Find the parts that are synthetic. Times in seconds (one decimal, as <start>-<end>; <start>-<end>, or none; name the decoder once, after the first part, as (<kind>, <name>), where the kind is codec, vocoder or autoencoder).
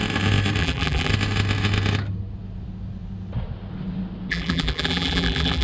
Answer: 0.6-1.1 (vocoder, BigVGAN v2); 4.3-5.6